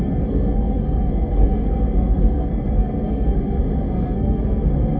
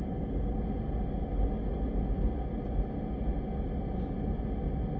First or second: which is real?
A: second